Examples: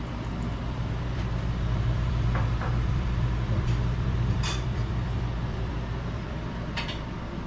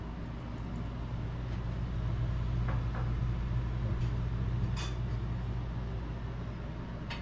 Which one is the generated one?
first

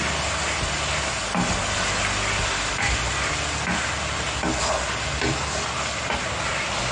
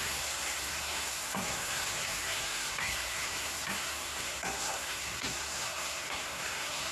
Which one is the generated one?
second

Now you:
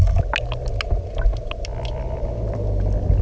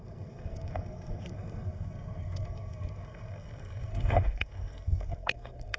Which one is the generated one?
second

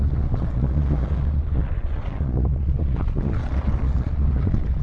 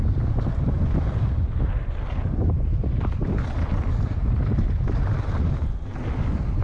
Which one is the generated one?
first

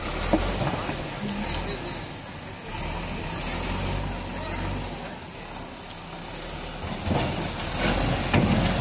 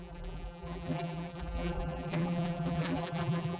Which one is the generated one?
second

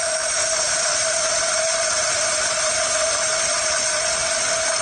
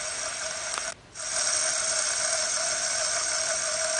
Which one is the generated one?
first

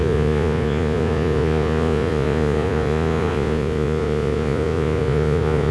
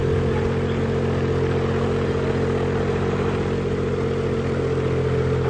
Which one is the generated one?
first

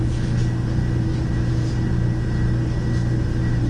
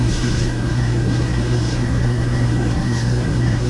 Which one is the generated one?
second